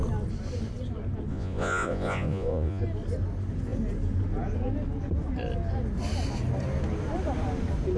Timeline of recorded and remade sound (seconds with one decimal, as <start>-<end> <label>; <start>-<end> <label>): 0.0-1.3 recorded; 1.3-2.8 remade; 2.8-8.0 recorded

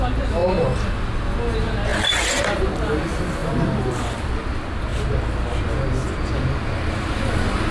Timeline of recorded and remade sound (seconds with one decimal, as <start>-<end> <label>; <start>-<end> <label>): 0.0-3.4 recorded; 3.4-4.3 remade; 4.3-7.7 recorded

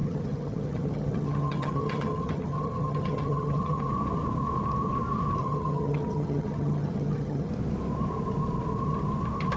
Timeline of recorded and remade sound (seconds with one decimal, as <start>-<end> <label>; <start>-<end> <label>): 0.0-3.9 remade; 3.9-5.4 recorded; 5.4-7.5 remade; 7.5-9.6 recorded

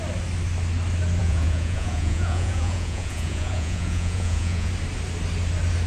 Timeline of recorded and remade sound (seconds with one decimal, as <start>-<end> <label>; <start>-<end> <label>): 0.0-1.2 recorded; 1.2-4.7 remade; 4.7-5.9 recorded

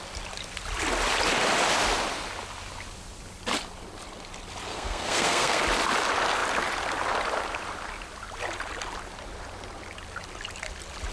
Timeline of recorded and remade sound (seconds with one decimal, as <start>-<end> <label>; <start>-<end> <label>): 0.0-4.7 recorded; 4.7-5.6 remade; 5.6-11.1 recorded

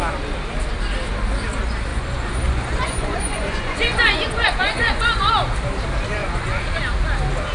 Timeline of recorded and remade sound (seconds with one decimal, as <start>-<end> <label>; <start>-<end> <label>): 0.0-1.9 recorded; 1.9-5.3 remade; 5.3-6.2 recorded; 6.2-6.8 remade; 6.8-7.5 recorded

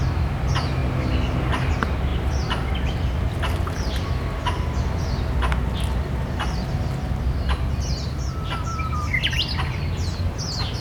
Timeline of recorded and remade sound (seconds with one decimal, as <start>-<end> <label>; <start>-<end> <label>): 0.0-2.1 recorded; 2.1-2.7 remade; 2.7-10.8 recorded